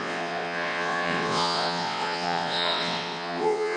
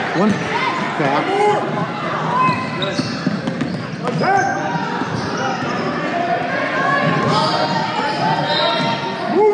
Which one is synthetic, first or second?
first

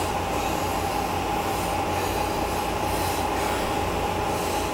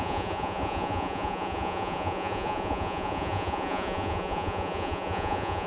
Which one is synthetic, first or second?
second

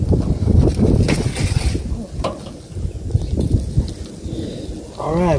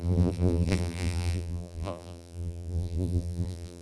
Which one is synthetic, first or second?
second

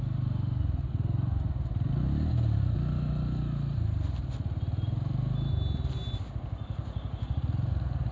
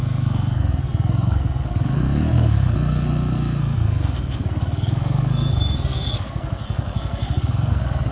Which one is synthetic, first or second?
second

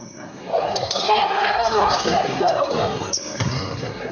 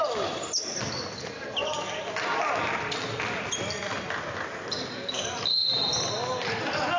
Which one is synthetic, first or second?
first